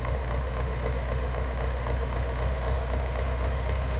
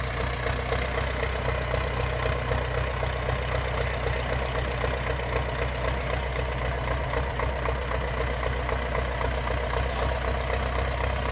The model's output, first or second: first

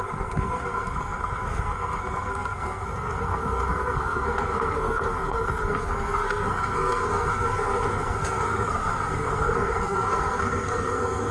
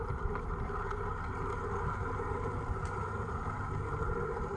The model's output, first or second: first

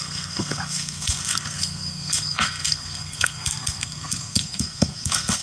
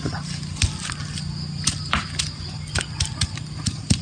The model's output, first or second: first